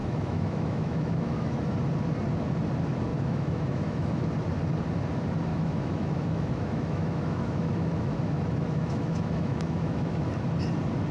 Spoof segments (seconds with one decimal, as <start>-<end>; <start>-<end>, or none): 0.0-1.6; 3.1-4.3; 5.5-10.3